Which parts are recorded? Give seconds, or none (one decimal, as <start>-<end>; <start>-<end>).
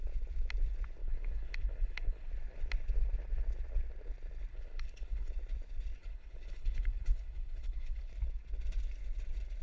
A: 0.0-1.0; 2.3-4.5; 5.3-6.0; 8.1-9.6